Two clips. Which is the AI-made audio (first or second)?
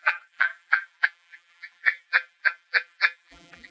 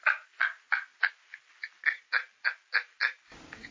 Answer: first